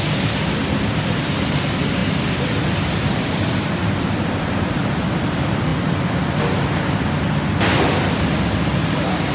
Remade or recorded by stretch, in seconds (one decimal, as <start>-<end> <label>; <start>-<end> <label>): 0.0-9.3 recorded